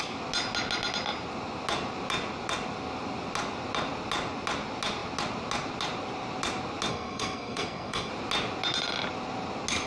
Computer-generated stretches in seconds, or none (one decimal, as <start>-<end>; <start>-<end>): 6.9-8.1

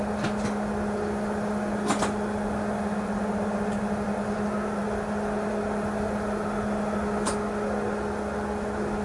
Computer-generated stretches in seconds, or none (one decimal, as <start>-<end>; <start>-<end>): none

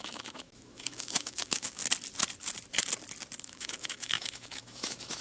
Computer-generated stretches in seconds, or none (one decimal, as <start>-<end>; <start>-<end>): 0.0-1.8; 3.5-5.2